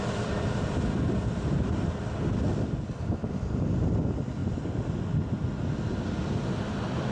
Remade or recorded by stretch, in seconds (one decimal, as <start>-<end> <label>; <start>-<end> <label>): 0.0-7.1 remade

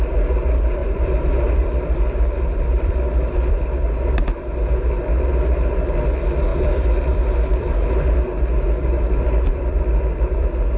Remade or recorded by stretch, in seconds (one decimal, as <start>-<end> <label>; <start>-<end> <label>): 0.0-0.8 recorded; 0.8-2.9 remade; 2.9-6.5 recorded; 6.5-7.7 remade; 7.7-9.5 recorded; 9.5-10.4 remade; 10.4-10.8 recorded

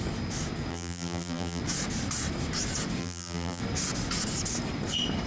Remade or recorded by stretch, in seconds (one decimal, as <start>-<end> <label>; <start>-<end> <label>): 0.0-0.7 recorded; 0.7-1.6 remade; 1.6-3.0 recorded; 3.0-3.6 remade; 3.6-5.3 recorded

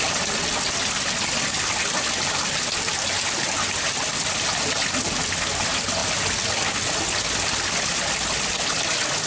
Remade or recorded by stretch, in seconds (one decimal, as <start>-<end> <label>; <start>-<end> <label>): 0.0-9.3 recorded

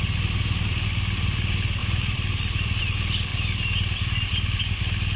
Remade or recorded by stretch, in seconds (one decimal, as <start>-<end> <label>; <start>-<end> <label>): 0.0-1.8 recorded; 1.8-2.8 remade; 2.8-3.3 recorded; 3.3-4.6 remade; 4.6-5.2 recorded

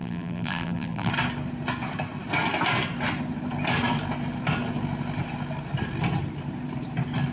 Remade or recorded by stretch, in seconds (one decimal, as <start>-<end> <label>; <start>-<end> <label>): 0.0-1.1 remade; 1.1-7.3 recorded